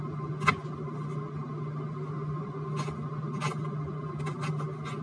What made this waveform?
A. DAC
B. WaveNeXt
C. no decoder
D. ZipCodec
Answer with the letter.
C